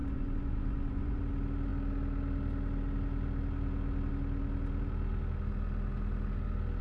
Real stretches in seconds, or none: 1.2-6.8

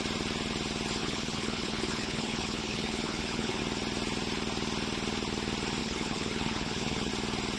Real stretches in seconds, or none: 0.0-1.0; 3.6-5.8; 7.1-7.6

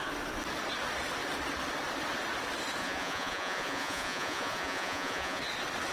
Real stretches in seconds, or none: 0.0-2.8; 5.4-5.9